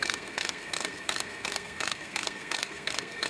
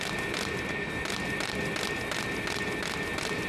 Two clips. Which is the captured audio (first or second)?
second